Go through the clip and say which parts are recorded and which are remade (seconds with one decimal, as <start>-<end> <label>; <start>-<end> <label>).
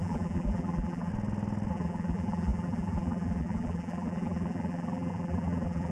0.0-1.1 remade; 1.1-1.7 recorded; 1.7-5.9 remade